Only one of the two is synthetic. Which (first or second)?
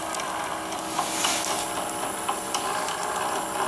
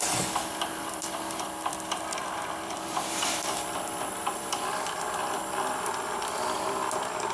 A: second